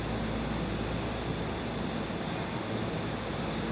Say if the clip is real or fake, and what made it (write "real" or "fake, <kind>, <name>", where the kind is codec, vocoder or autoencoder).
real